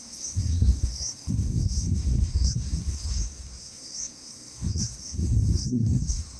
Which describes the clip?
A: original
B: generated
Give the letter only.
B